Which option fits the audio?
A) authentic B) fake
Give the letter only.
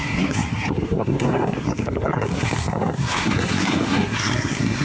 B